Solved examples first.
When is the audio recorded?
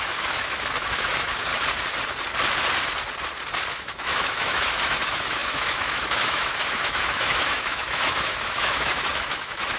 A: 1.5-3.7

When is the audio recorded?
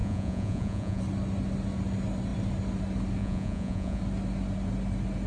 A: 1.0-3.2; 4.0-5.3